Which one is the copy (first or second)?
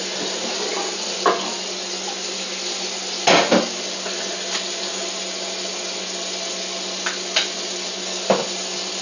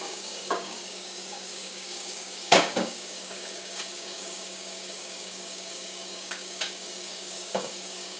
second